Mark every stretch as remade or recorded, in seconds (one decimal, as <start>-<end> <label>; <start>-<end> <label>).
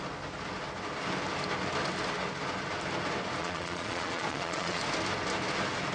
0.0-3.4 recorded; 3.4-4.8 remade; 4.8-5.9 recorded